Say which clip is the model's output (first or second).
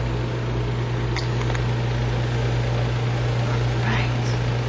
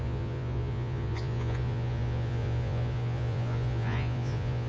second